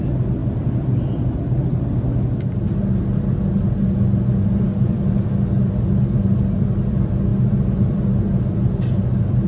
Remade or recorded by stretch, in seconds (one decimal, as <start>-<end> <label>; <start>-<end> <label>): 0.0-9.5 recorded